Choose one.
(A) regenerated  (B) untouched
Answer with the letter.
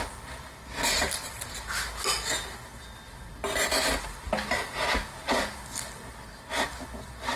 B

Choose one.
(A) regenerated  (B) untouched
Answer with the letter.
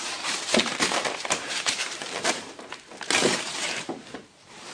A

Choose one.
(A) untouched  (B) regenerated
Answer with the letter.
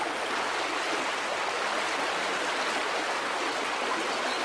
A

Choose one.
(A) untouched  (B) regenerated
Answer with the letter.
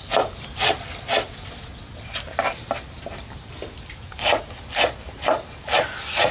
A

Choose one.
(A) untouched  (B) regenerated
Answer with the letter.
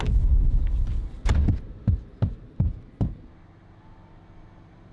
A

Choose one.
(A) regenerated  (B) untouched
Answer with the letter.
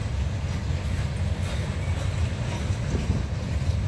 B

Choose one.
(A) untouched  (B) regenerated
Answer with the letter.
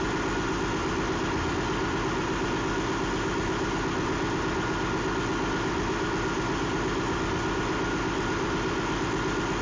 A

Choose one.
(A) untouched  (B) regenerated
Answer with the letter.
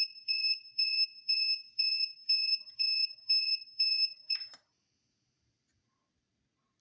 B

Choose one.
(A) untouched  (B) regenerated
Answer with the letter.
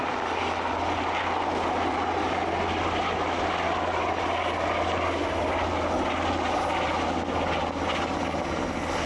A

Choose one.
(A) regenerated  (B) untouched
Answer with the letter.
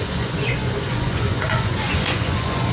A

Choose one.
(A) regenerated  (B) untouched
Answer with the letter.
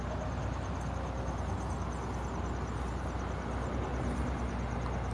B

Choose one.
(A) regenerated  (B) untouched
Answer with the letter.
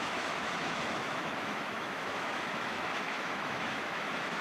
A